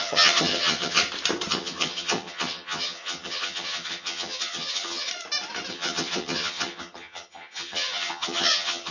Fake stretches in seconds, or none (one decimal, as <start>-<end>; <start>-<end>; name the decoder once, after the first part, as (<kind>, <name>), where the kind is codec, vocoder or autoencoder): 0.0-1.0 (vocoder, HiFi-GAN); 1.5-5.1; 5.7-8.9